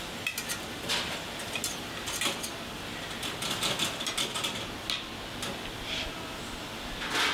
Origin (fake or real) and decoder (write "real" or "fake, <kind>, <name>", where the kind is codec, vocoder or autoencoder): real